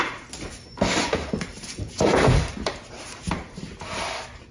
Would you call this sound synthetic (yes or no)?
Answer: yes